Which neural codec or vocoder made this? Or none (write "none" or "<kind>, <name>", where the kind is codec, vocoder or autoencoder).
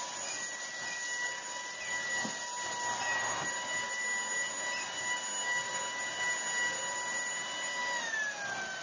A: none